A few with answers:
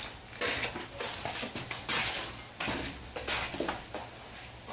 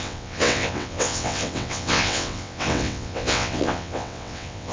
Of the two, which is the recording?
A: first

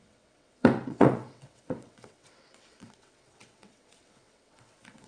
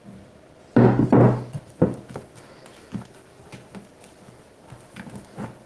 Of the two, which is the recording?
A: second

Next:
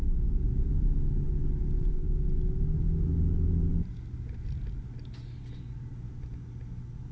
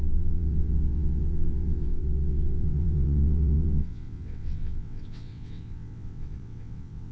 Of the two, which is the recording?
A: first